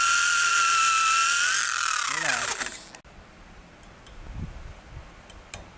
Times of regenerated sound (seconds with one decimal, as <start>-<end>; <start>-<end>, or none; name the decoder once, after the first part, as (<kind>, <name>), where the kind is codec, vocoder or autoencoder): none